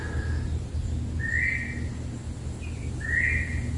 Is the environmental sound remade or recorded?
recorded